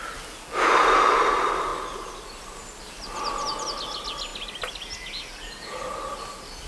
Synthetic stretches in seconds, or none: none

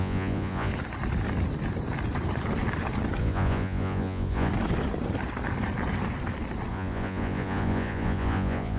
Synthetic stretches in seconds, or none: 0.0-0.7 (vocoder, Vocos); 3.2-4.5; 6.7-8.8

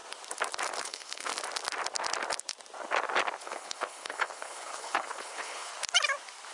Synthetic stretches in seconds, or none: 0.8-1.3 (codec, HILCodec); 3.4-5.7